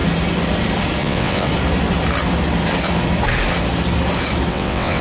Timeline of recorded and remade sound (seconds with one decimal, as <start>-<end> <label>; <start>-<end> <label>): 0.0-1.0 recorded; 1.0-1.5 remade; 1.5-4.5 recorded; 4.5-5.0 remade